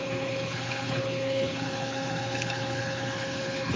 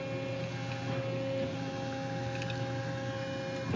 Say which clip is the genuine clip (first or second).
second